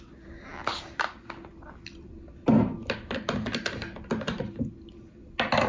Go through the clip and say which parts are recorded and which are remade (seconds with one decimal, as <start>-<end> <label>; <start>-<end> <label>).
0.0-5.7 recorded